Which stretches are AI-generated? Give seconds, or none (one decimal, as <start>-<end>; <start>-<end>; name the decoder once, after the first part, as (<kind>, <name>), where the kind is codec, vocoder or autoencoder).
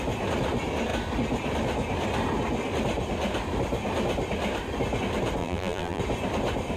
5.4-6.0 (vocoder, BigVGAN v2)